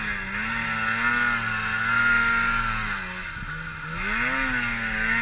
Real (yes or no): yes